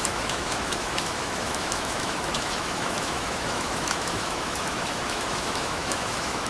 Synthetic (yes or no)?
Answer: yes